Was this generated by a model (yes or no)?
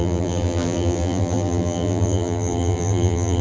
yes